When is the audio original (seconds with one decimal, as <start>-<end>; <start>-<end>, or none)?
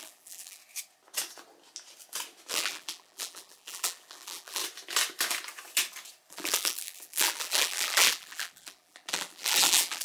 0.6-2.5; 4.6-6.3